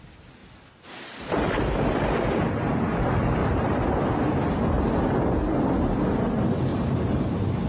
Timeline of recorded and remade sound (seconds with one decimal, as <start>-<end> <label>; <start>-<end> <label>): 0.0-0.4 recorded; 0.4-1.6 remade; 1.6-3.4 recorded; 3.4-3.9 remade; 3.9-6.7 recorded; 6.7-7.3 remade; 7.3-7.7 recorded